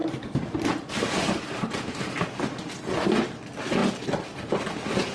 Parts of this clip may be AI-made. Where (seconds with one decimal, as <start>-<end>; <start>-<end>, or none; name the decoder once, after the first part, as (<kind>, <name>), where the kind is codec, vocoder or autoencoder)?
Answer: 0.0-2.7 (vocoder, BigVGAN v2)